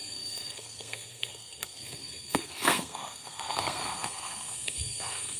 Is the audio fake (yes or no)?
yes